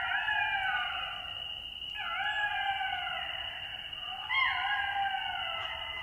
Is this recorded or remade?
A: recorded